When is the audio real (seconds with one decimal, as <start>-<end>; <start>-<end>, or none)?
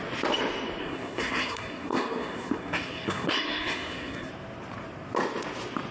0.0-0.8; 4.3-5.9